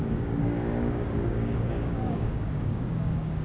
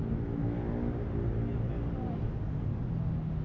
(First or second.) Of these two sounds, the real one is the second